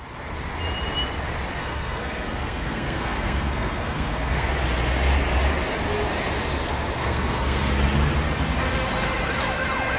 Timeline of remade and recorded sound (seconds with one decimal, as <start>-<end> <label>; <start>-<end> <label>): 0.0-1.6 recorded; 1.6-4.5 remade; 4.5-7.0 recorded; 7.0-7.7 remade; 7.7-10.0 recorded